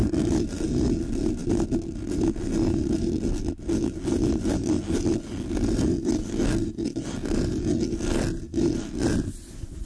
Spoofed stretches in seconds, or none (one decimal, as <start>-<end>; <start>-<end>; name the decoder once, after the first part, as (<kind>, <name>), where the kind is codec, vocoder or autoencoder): none